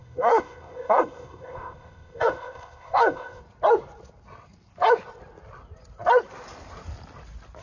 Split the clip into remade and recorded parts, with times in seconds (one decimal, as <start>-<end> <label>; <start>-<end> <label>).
0.0-3.4 remade; 3.4-7.6 recorded